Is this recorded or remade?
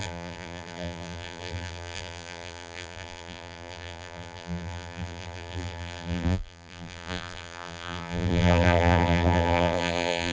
remade